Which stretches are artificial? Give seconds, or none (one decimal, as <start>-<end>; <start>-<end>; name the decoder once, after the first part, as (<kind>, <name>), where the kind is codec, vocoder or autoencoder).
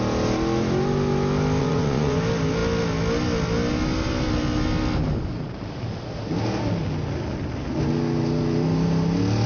1.6-2.2 (vocoder, Vocos)